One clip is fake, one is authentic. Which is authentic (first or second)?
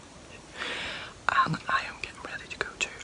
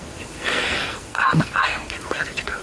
first